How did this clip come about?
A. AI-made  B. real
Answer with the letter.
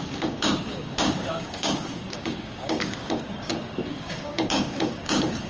A